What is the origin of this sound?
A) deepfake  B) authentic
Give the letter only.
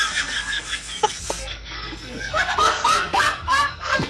A